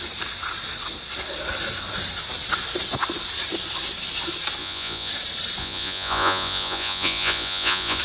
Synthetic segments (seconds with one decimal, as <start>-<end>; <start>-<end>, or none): 4.6-5.1; 5.6-8.0